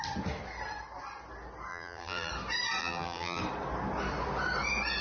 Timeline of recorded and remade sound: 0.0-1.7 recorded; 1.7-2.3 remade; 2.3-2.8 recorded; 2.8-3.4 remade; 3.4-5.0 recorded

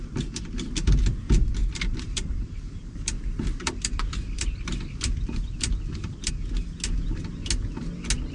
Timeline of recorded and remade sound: 0.0-1.6 recorded; 1.6-6.3 remade; 6.3-8.3 recorded